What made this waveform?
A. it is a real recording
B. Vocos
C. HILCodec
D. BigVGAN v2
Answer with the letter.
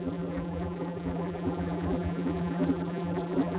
D